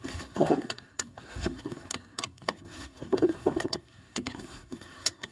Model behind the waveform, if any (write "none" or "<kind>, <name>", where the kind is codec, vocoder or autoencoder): codec, SNAC